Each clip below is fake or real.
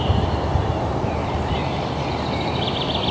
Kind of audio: real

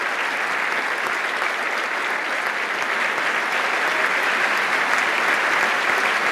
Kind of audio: real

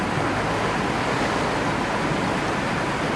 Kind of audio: real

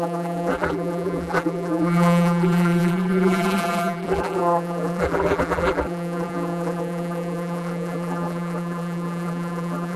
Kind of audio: fake